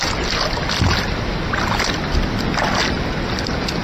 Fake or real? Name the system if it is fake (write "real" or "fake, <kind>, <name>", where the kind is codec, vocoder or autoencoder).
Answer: real